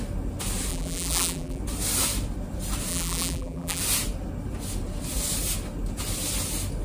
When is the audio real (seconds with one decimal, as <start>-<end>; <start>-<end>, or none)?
0.0-0.7; 1.6-2.9; 3.8-6.8